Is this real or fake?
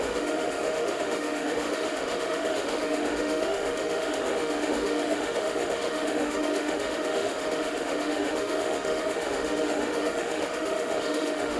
fake